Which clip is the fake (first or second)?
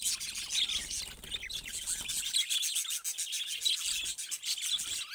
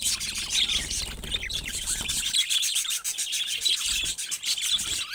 second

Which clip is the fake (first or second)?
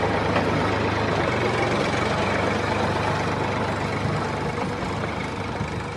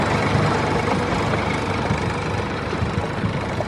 second